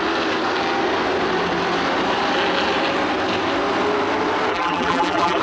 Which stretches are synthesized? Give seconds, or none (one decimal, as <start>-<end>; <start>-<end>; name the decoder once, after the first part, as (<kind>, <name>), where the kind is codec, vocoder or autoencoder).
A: 4.5-5.4 (vocoder, BigVGAN v2)